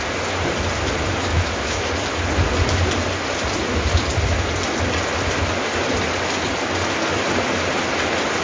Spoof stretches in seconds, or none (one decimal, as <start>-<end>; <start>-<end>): 1.3-1.9